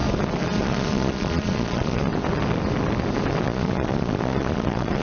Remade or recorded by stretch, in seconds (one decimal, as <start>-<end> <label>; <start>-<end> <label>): 0.0-0.6 recorded; 0.6-2.1 remade; 2.1-3.4 recorded; 3.4-5.0 remade